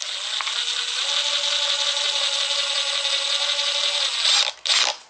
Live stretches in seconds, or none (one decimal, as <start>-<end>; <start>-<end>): 0.0-5.1